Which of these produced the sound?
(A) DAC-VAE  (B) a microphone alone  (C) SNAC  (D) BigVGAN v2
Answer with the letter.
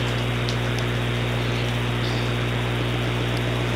B